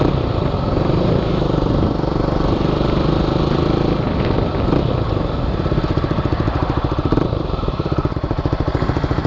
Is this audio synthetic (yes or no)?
yes